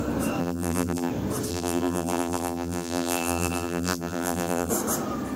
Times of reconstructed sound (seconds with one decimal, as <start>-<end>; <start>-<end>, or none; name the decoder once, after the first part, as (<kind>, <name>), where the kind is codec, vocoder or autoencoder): 0.4-1.1 (vocoder, BigVGAN v2); 1.5-4.7